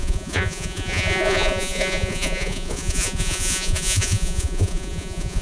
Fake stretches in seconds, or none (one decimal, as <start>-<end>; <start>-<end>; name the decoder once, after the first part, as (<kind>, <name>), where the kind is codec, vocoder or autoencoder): 0.0-5.4 (vocoder, Vocos)